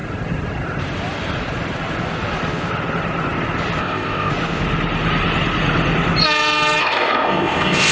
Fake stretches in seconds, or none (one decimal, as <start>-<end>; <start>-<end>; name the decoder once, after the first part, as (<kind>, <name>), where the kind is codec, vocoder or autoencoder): 3.8-4.3 (codec, ZipCodec); 6.8-7.9